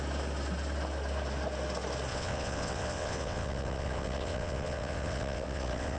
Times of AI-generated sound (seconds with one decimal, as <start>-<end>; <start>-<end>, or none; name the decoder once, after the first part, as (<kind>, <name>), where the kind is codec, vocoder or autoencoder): 2.1-6.0 (vocoder, WaveNeXt)

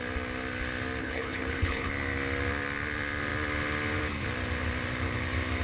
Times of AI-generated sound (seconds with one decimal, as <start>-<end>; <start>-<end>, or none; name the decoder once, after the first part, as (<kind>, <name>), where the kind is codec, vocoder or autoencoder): 1.0-1.9 (codec, HILCodec)

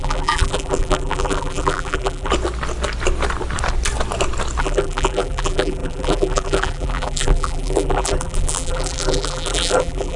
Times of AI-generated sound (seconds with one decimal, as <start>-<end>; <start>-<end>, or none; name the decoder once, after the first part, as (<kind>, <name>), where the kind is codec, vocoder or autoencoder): 0.0-2.3 (vocoder, BigVGAN v2); 4.6-10.2

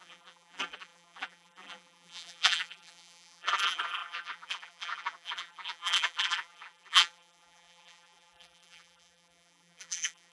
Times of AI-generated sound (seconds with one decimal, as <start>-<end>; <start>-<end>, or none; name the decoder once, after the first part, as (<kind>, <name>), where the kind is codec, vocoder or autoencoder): 0.0-10.3 (vocoder, BigVGAN v2)